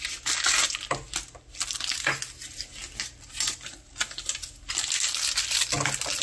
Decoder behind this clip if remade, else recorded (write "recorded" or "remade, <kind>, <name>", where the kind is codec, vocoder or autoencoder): recorded